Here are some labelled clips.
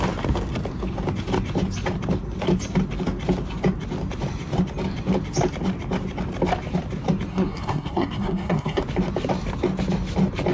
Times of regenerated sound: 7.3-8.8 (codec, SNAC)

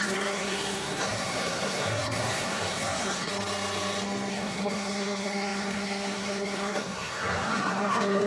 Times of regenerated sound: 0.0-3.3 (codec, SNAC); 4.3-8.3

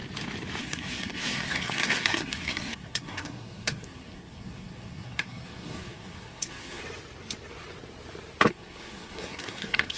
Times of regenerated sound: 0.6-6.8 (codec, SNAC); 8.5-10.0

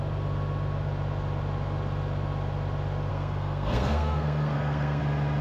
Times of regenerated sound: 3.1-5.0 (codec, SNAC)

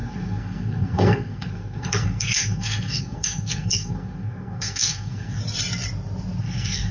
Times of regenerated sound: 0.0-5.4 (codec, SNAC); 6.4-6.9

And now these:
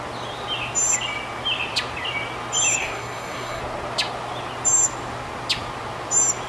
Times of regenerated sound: 2.8-3.6 (codec, SNAC)

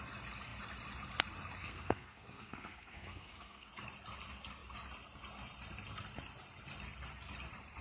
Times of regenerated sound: 1.6-3.7 (codec, SNAC)